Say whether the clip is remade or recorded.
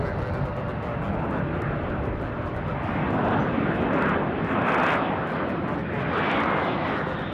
recorded